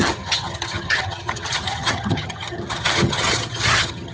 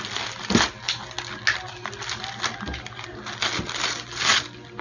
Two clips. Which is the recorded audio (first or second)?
second